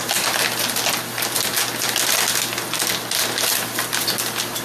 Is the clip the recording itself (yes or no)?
yes